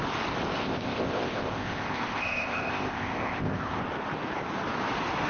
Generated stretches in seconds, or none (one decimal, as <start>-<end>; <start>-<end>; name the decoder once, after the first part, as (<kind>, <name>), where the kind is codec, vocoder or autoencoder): 0.6-3.8 (codec, ZipCodec)